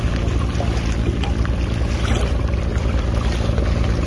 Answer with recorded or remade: recorded